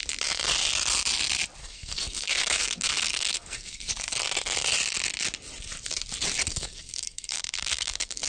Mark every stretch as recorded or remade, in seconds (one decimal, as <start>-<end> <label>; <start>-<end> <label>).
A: 0.0-1.6 recorded; 1.6-3.9 remade; 3.9-6.4 recorded; 6.4-8.3 remade